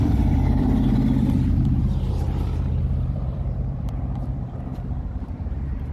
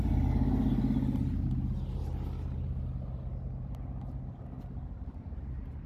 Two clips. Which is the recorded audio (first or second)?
second